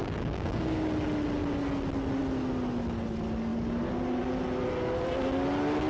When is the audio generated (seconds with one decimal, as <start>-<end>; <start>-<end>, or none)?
0.0-0.9